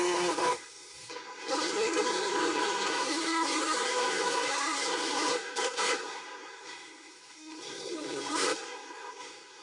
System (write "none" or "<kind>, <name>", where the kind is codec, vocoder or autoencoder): codec, SNAC